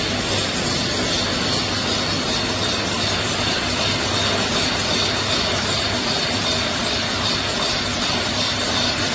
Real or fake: real